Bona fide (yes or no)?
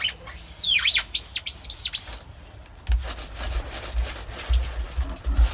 yes